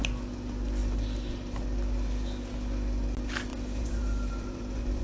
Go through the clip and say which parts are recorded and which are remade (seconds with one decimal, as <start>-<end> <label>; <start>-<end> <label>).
0.0-3.5 recorded; 3.5-5.0 remade